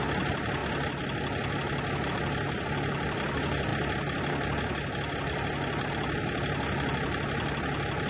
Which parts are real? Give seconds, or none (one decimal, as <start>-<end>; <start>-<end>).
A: 0.0-8.1